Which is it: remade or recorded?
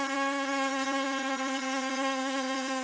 remade